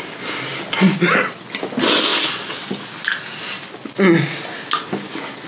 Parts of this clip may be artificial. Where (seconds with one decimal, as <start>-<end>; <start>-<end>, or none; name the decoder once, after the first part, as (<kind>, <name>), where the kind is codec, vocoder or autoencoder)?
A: none